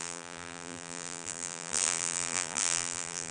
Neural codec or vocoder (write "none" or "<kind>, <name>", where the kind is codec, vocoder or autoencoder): vocoder, BigVGAN v2